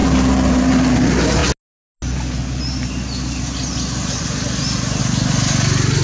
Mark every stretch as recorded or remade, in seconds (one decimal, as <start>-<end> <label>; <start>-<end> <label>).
0.0-6.0 recorded